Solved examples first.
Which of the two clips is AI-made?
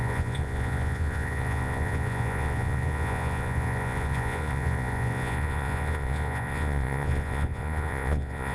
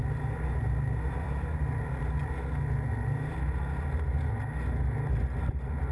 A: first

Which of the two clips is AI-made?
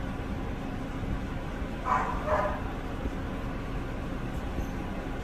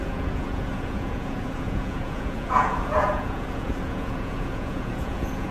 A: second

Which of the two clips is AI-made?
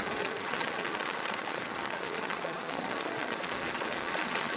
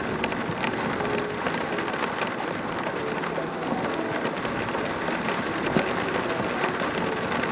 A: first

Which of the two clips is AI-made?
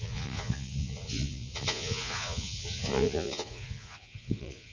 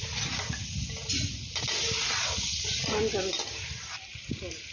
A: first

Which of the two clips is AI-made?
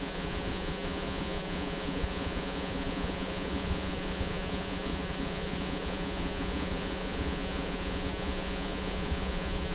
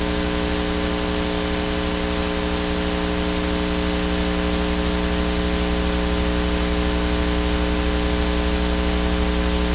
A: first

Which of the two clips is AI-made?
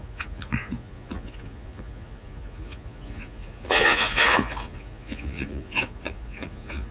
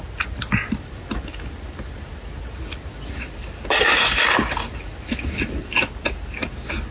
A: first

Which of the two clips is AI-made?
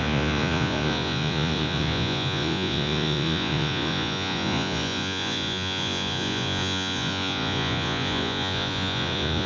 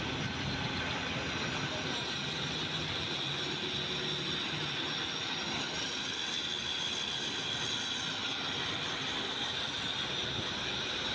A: first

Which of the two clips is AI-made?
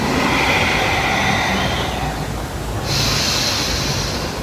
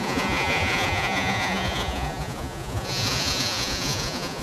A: second